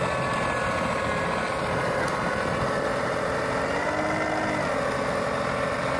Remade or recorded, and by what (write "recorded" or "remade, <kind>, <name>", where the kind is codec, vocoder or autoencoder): remade, vocoder, BigVGAN v2